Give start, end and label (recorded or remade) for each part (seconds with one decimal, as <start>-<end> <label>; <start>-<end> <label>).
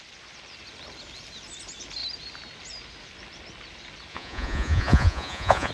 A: 0.0-4.1 recorded; 4.1-5.7 remade